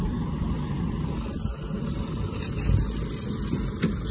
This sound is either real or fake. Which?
real